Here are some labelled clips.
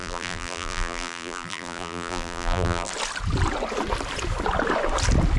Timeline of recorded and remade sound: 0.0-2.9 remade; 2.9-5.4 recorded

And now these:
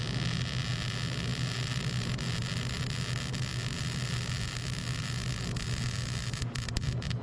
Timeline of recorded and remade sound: 0.0-7.2 recorded

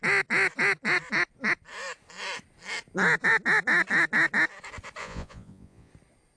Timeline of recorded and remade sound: 0.0-5.0 recorded; 5.0-5.9 remade; 5.9-6.4 recorded

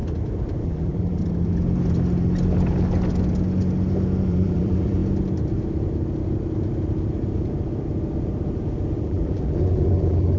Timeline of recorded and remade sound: 0.0-0.6 recorded; 0.6-1.2 remade; 1.2-4.3 recorded; 4.3-5.0 remade; 5.0-9.0 recorded; 9.0-10.4 remade

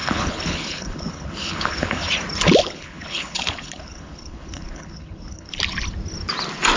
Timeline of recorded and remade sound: 0.0-2.1 remade; 2.1-2.6 recorded; 2.6-5.6 remade; 5.6-6.8 recorded

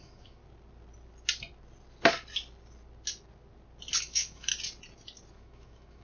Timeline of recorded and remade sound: 0.0-0.4 remade; 0.4-4.0 recorded; 4.0-4.5 remade; 4.5-5.3 recorded; 5.3-6.0 remade

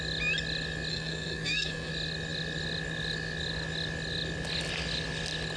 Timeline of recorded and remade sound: 0.0-0.9 recorded; 0.9-1.9 remade; 1.9-5.6 recorded

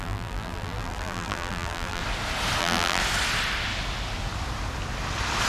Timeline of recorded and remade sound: 0.0-2.0 remade; 2.0-2.6 recorded; 2.6-3.0 remade; 3.0-5.5 recorded